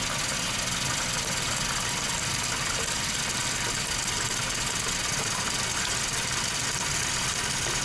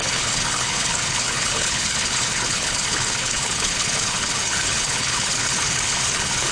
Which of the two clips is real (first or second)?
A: first